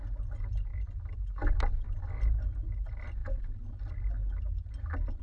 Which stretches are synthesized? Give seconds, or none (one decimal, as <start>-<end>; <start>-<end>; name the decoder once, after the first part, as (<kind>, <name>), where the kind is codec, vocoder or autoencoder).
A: none